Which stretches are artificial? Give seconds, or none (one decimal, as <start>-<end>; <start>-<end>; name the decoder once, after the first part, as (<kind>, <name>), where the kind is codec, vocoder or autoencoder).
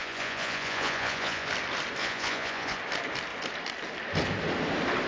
0.0-1.5 (vocoder, Vocos); 2.0-2.8